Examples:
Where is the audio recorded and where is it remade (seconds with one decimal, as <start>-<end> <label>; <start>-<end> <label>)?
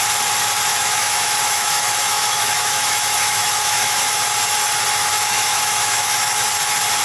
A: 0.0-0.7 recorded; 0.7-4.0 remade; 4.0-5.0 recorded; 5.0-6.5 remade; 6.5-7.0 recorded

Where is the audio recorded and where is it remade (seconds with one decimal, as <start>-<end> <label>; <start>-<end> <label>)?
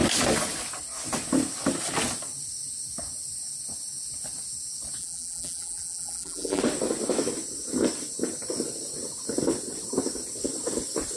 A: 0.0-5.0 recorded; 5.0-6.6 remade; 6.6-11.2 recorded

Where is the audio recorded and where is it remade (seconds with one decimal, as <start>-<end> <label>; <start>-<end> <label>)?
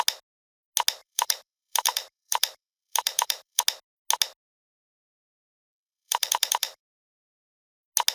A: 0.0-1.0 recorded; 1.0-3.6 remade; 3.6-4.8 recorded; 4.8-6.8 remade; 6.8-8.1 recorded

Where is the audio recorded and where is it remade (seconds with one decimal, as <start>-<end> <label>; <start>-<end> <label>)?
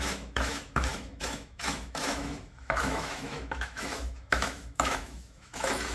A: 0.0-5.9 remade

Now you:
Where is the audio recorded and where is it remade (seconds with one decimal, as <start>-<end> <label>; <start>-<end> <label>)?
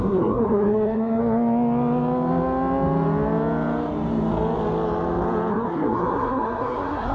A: 0.0-1.2 remade; 1.2-5.5 recorded; 5.5-7.1 remade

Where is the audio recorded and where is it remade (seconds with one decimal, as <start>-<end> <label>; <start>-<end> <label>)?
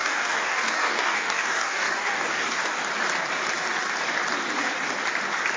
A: 0.0-2.8 remade; 2.8-5.6 recorded